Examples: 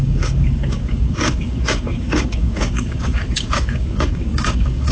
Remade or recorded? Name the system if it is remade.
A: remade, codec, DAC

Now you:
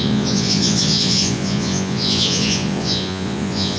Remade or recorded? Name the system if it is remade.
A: remade, vocoder, Vocos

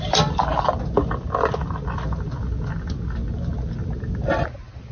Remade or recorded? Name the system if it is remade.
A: recorded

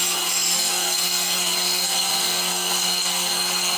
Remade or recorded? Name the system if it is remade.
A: remade, codec, SNAC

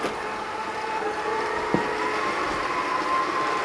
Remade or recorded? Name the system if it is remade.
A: recorded